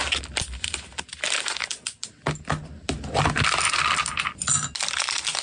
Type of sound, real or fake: real